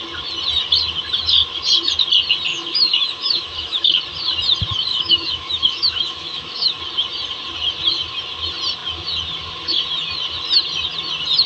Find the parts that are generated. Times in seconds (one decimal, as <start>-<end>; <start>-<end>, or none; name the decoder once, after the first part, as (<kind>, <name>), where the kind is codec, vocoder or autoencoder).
2.5-4.0 (autoencoder, DAC-VAE); 4.9-6.8